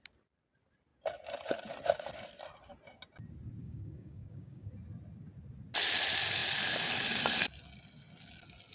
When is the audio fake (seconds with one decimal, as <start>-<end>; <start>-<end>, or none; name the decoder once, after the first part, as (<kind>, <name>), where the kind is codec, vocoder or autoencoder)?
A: 3.6-4.7 (codec, DAC)